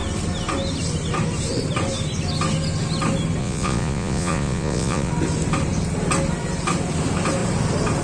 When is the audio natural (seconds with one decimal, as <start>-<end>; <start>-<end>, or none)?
0.0-3.4; 5.1-8.0